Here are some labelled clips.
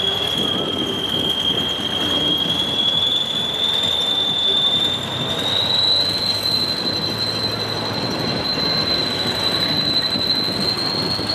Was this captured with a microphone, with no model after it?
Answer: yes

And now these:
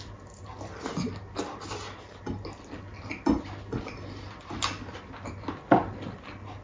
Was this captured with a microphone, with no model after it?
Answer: yes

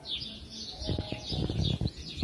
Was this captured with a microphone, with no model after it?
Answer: no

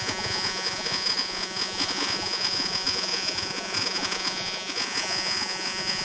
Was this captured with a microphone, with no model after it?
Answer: no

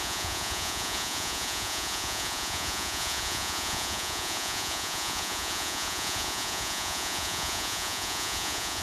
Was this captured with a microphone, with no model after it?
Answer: no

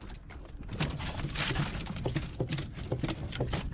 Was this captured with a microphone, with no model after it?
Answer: yes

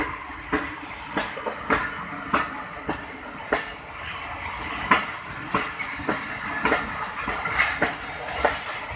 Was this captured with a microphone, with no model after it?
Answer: yes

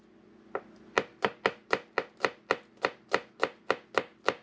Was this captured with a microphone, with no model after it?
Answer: yes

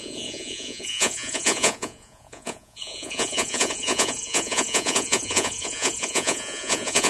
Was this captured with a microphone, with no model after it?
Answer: no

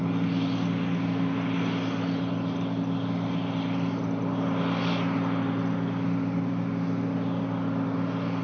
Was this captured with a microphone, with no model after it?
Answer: yes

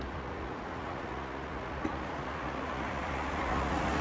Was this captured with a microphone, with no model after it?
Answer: no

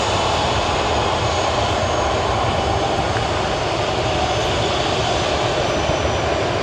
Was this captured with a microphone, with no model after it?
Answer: yes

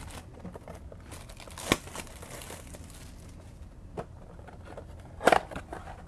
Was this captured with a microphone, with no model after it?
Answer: yes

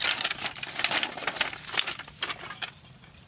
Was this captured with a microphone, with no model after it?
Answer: yes